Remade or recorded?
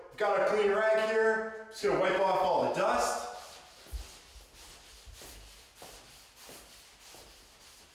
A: recorded